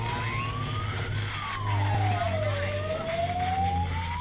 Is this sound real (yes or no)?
yes